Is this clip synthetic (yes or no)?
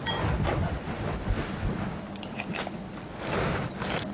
yes